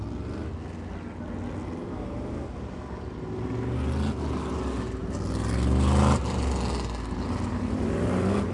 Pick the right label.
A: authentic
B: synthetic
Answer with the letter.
A